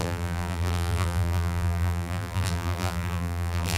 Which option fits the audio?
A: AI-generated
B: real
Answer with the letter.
A